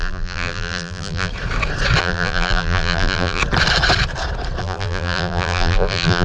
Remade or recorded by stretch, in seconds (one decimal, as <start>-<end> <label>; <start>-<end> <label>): 0.0-1.3 remade; 1.3-2.0 recorded; 2.0-3.4 remade; 3.4-4.6 recorded; 4.6-6.2 remade